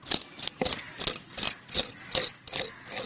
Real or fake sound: real